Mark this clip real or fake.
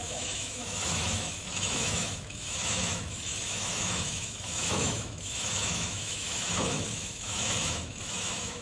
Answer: fake